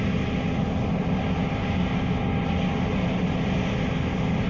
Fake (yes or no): no